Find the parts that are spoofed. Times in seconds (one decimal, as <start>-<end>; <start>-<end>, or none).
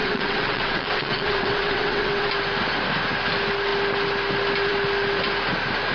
0.0-2.3